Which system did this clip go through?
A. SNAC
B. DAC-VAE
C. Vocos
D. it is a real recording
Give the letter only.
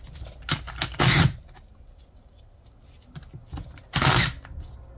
D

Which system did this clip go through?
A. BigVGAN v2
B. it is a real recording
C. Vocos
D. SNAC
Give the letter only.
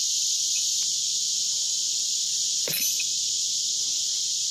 B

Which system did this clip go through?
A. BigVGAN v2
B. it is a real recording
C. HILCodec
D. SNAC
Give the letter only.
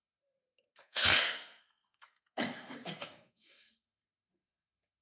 D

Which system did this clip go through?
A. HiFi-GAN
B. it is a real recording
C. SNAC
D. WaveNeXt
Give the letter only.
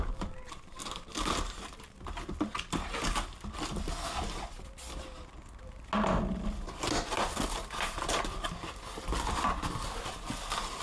B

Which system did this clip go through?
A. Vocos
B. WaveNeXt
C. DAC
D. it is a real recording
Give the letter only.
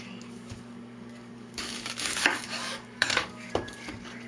C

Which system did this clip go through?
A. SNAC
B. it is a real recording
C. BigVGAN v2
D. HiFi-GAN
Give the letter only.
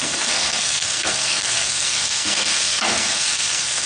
A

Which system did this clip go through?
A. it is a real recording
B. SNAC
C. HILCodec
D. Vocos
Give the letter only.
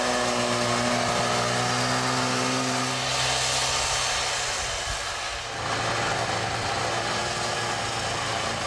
A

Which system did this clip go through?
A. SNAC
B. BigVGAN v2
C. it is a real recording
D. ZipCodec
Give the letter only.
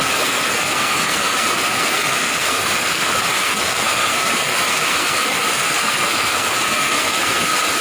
A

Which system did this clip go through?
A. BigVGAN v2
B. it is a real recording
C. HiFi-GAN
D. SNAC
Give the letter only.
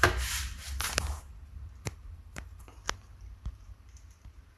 A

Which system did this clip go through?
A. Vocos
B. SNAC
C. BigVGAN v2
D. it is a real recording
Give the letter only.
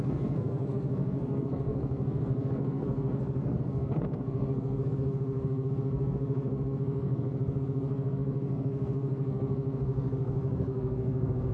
B